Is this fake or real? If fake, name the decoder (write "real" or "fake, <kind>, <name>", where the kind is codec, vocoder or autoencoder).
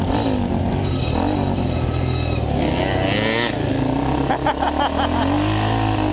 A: real